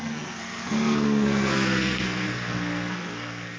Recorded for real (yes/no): no